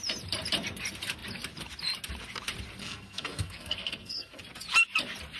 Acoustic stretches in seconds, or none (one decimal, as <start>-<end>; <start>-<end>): 0.0-2.8; 4.4-5.4